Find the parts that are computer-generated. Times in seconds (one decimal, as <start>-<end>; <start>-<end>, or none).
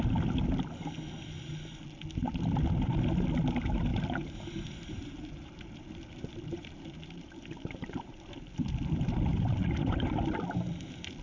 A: 3.9-8.3; 9.3-9.9